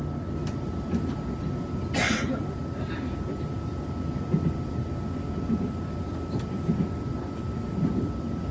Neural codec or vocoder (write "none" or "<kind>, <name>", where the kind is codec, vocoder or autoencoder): none